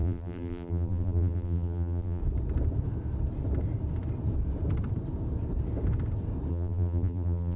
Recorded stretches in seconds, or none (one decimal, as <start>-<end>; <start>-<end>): 2.2-6.5